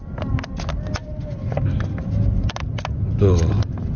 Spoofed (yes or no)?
no